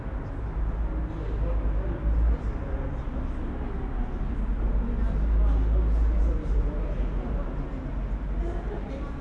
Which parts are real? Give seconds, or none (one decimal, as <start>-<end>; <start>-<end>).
0.0-9.2

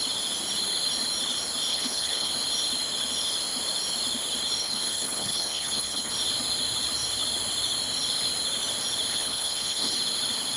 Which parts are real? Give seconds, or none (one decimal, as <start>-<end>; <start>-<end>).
0.0-1.7; 2.3-4.6; 6.1-9.1; 9.9-10.6

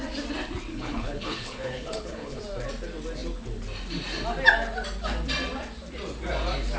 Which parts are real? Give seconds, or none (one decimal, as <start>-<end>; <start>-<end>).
0.0-0.7; 2.4-6.8

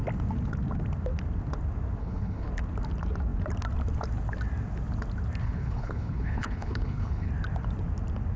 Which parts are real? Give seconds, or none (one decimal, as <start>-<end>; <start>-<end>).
0.0-2.0; 2.5-5.4; 7.3-8.4

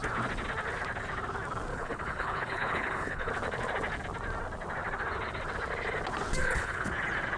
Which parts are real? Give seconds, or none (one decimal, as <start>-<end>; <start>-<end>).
0.0-1.7; 3.3-6.4; 6.9-7.4

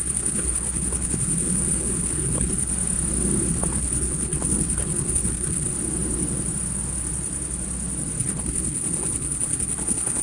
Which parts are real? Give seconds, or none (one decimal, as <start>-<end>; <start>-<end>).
2.7-3.5; 5.7-8.2

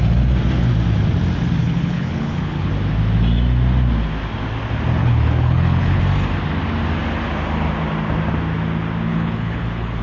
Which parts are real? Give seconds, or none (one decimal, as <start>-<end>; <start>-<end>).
0.0-1.6; 2.7-5.0; 6.0-9.1